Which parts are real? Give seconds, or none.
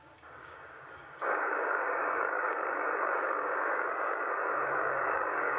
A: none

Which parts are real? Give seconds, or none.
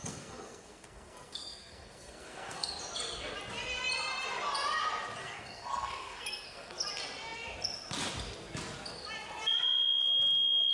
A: 2.7-5.2; 6.7-10.7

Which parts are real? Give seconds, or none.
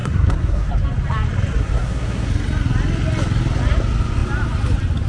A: 0.7-1.6; 2.3-5.1